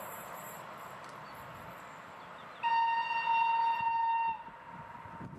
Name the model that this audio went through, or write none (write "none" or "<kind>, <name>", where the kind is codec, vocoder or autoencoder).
none